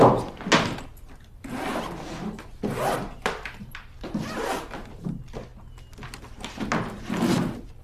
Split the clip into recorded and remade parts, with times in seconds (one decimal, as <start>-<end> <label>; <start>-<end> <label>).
0.0-7.8 recorded